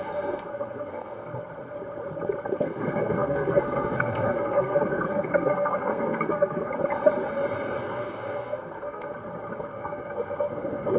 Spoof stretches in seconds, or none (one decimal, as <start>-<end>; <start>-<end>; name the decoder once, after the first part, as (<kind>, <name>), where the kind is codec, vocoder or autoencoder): 0.0-1.3 (codec, SNAC); 2.5-6.7; 7.8-9.1; 9.6-11.0